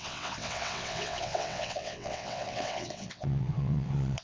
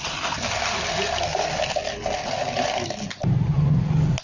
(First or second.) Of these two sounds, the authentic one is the second